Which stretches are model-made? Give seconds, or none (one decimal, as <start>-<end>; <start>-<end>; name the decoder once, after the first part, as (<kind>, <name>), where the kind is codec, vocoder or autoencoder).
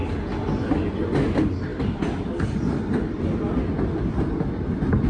none